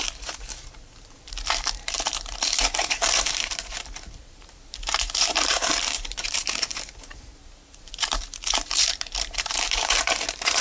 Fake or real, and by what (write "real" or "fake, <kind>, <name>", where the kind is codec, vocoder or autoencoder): fake, vocoder, BigVGAN v2